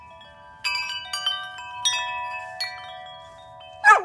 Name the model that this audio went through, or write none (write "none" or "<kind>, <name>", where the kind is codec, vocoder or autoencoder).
none